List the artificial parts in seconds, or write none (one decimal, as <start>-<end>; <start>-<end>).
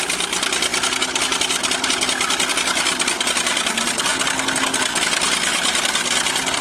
none